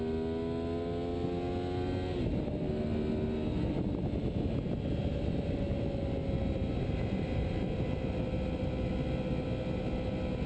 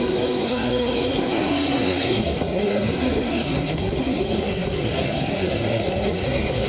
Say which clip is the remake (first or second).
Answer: second